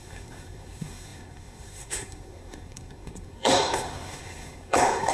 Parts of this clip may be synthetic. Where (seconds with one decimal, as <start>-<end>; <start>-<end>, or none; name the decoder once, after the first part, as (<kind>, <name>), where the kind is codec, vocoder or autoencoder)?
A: 0.0-5.1 (codec, SNAC)